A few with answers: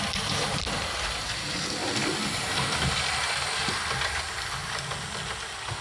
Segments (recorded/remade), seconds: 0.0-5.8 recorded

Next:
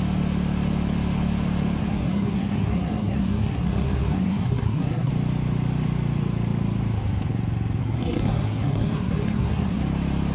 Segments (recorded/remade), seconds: 0.0-1.8 recorded; 1.8-5.1 remade; 5.1-7.8 recorded; 7.8-9.8 remade; 9.8-10.3 recorded

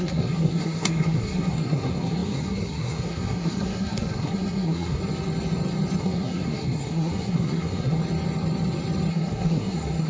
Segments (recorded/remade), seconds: 0.0-5.0 remade; 5.0-6.0 recorded; 6.0-8.0 remade; 8.0-9.1 recorded; 9.1-10.1 remade

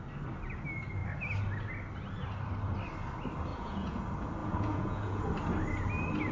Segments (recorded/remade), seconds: 0.0-3.5 recorded; 3.5-4.0 remade; 4.0-4.4 recorded; 4.4-5.2 remade; 5.2-6.3 recorded

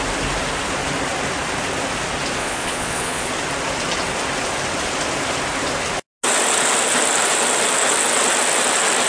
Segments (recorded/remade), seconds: 0.0-2.4 recorded; 2.4-3.3 remade; 3.3-9.1 recorded

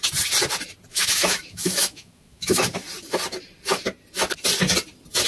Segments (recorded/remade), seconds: 0.0-0.9 recorded; 0.9-2.7 remade; 2.7-5.3 recorded